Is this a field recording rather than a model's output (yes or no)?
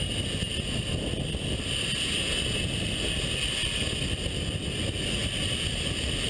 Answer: yes